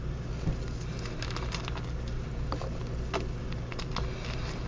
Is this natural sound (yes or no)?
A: yes